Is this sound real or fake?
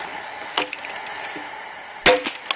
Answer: real